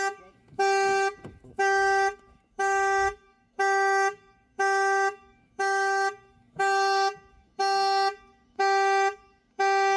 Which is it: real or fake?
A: fake